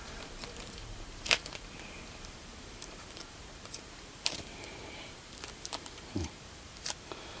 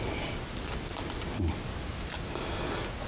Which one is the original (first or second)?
second